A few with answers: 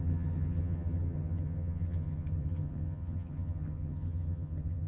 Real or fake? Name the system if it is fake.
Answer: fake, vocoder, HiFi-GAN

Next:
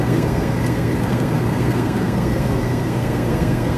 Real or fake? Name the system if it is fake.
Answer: fake, codec, SNAC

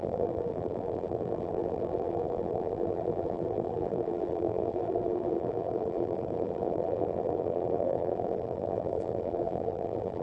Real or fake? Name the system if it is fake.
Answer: fake, vocoder, BigVGAN v2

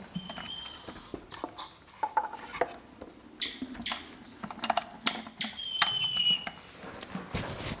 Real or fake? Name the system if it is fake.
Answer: real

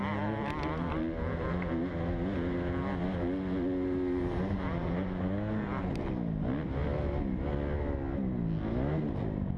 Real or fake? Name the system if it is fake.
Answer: real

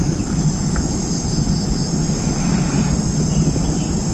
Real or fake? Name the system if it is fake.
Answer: real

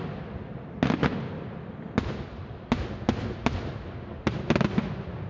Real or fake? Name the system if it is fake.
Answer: real